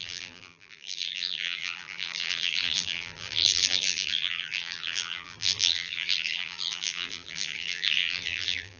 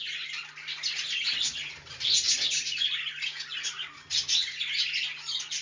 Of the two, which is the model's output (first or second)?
first